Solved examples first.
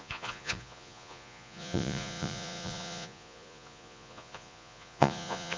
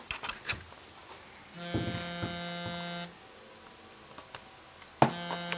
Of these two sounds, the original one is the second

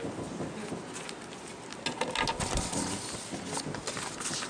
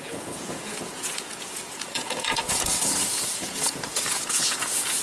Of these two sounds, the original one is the first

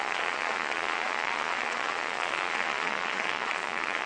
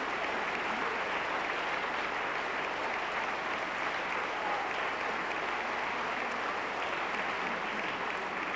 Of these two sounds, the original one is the second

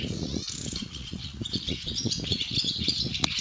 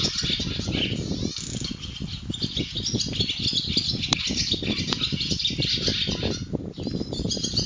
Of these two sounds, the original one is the second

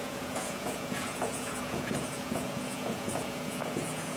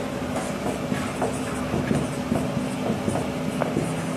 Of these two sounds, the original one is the second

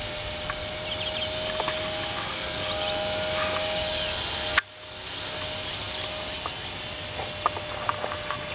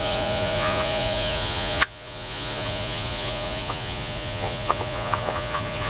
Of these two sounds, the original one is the first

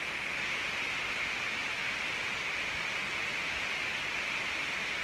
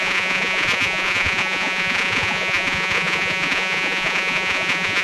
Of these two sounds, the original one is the first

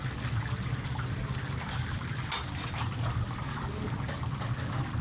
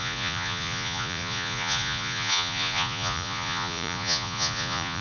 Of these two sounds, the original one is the first